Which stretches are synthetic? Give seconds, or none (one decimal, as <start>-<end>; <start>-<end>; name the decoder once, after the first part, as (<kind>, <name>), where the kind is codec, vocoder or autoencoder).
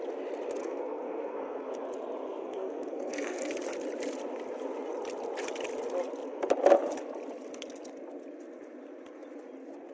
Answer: 0.6-1.7 (codec, SNAC); 2.4-3.5